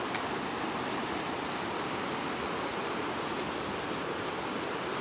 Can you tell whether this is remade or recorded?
recorded